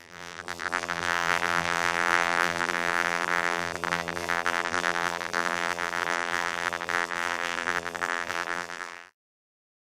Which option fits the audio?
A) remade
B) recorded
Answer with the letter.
A